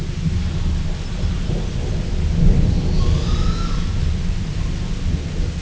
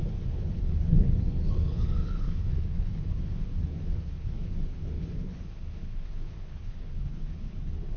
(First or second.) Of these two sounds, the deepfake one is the second